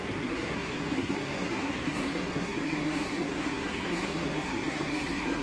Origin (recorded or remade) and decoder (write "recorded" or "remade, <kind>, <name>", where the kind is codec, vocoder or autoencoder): remade, codec, SNAC